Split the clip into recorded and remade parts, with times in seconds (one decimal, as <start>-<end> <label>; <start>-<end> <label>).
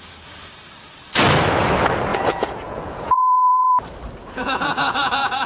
0.0-2.1 recorded; 2.1-3.7 remade; 3.7-4.2 recorded; 4.2-5.5 remade